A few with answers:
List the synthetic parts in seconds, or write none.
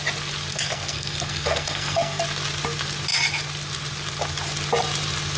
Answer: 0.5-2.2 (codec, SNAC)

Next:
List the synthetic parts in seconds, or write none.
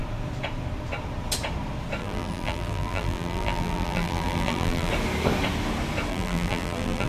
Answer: 2.0-4.9 (vocoder, BigVGAN v2); 6.1-7.1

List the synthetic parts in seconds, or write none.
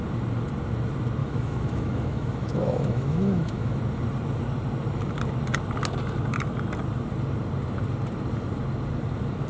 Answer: 1.2-3.8 (autoencoder, DAC-VAE)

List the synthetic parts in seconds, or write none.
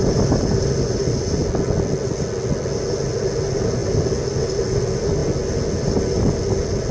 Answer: none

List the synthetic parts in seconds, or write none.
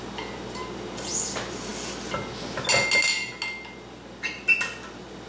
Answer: none